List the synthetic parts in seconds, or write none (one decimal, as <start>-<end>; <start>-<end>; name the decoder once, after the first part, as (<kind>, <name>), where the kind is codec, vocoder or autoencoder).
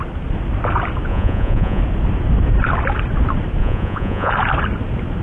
1.1-1.8 (vocoder, Vocos); 3.6-4.3